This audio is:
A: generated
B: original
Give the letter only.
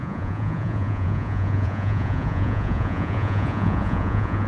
A